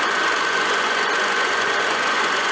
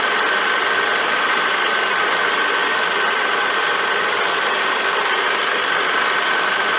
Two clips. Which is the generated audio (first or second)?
first